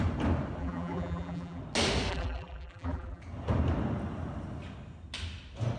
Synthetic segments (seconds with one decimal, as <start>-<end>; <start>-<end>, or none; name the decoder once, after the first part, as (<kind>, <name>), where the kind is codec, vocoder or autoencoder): 0.6-1.6 (vocoder, BigVGAN v2); 2.1-3.2

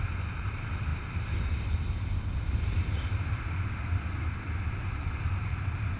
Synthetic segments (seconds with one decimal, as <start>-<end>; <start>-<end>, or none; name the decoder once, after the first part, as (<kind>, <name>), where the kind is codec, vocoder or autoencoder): none

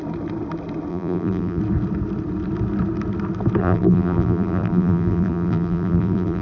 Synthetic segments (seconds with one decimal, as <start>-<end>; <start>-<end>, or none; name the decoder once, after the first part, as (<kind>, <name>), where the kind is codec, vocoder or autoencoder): 0.9-1.6 (vocoder, BigVGAN v2); 3.6-6.4

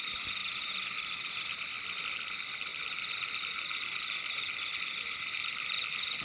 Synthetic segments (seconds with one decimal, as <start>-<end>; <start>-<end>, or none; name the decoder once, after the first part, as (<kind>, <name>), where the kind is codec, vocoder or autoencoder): 0.4-2.0 (vocoder, BigVGAN v2)

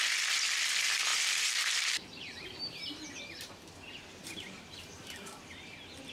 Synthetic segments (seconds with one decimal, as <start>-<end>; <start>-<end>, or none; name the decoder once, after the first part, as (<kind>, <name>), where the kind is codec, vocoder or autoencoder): 1.1-4.8 (vocoder, BigVGAN v2)

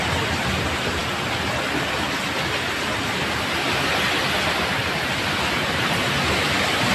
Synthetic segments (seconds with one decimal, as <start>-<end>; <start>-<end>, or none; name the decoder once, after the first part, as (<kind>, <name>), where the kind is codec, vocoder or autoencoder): 4.8-6.9 (vocoder, BigVGAN v2)

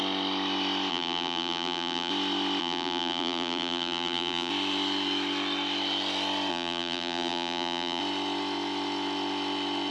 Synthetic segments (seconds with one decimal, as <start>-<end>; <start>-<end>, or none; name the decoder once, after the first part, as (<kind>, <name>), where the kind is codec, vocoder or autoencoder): 0.9-2.1 (vocoder, BigVGAN v2); 2.6-4.5; 6.5-8.0